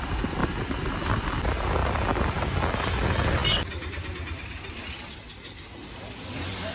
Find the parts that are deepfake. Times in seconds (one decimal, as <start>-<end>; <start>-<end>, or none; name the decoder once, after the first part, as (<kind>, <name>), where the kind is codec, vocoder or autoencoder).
none